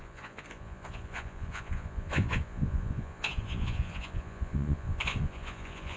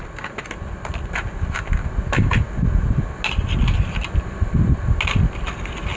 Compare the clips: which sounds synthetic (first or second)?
first